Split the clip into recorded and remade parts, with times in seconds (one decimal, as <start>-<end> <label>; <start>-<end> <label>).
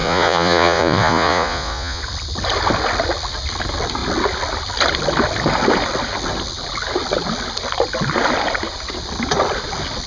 0.0-2.0 remade; 2.0-10.1 recorded